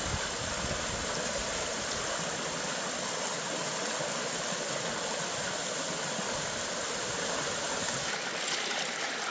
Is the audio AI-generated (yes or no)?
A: no